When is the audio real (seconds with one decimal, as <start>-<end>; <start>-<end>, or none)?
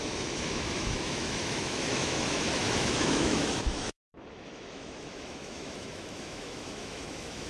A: none